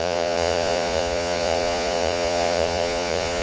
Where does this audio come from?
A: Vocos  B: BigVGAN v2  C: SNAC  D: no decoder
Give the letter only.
A